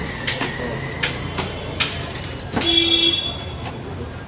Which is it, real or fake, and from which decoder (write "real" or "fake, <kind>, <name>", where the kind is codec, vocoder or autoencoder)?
real